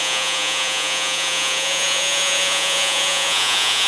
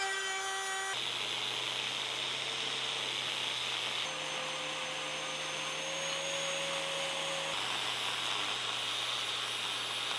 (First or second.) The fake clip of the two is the first